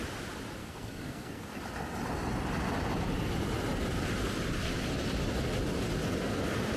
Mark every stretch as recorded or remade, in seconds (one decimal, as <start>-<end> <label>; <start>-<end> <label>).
0.0-0.6 recorded; 0.6-1.6 remade; 1.6-6.8 recorded